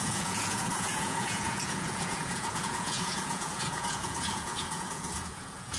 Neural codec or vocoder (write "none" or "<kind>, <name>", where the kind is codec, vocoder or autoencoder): vocoder, Vocos